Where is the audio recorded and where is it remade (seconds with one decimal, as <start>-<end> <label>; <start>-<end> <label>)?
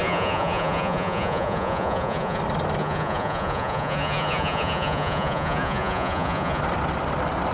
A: 0.0-2.4 remade; 2.4-2.8 recorded; 2.8-6.6 remade; 6.6-7.5 recorded